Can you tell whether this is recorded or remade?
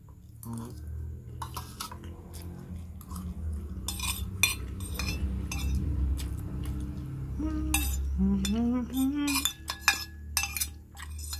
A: recorded